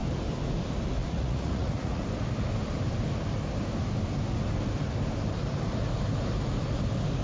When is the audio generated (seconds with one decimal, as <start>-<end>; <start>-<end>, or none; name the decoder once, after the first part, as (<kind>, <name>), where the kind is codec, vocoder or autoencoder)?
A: 1.0-2.0 (vocoder, Vocos)